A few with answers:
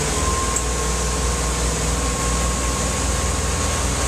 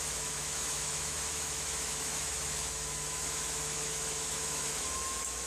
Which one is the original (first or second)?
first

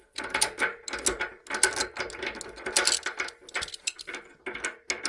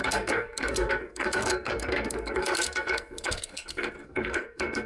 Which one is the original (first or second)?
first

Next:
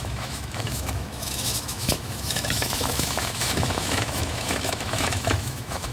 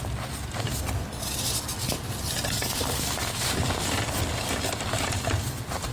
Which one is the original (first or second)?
second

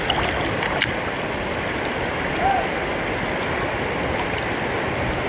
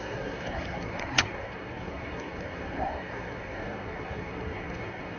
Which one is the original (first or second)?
first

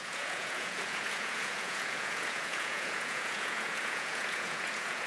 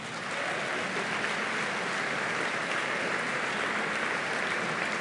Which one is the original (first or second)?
second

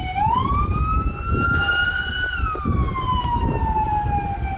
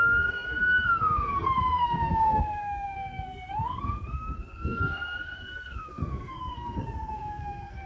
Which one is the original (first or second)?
first